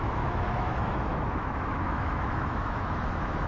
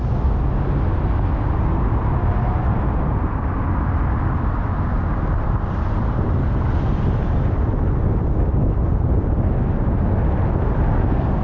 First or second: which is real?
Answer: second